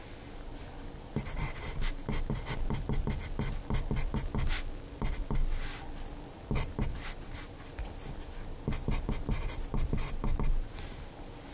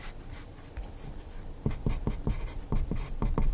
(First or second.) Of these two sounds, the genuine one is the first